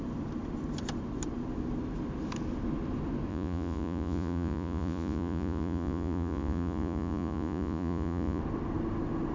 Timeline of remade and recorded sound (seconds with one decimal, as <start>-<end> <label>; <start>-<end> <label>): 0.0-3.3 recorded; 3.3-8.4 remade; 8.4-9.3 recorded